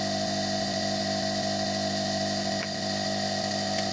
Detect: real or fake real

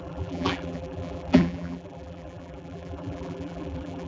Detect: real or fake fake